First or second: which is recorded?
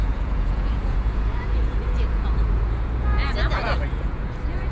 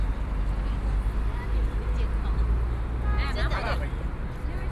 second